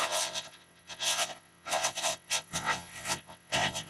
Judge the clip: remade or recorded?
remade